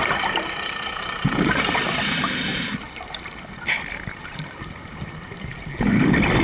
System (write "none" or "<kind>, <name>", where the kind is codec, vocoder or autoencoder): vocoder, BigVGAN v2